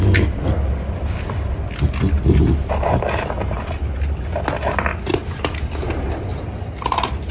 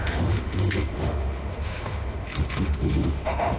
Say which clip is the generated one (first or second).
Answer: second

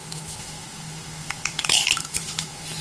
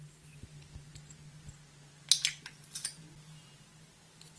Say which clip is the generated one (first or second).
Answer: first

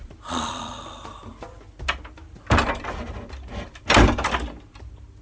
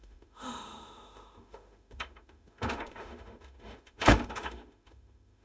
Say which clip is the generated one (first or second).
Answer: second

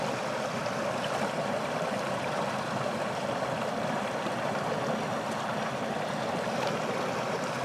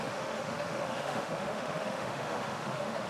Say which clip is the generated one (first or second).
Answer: second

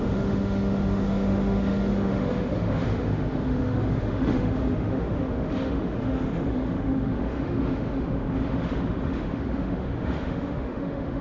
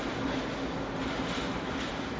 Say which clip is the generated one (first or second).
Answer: first